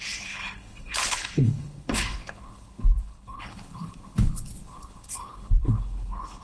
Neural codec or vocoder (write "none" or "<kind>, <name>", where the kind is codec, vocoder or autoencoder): codec, HILCodec